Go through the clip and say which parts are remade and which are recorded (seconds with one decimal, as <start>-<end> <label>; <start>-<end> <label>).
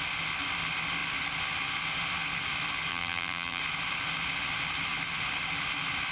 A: 0.0-2.9 recorded; 2.9-3.6 remade; 3.6-6.1 recorded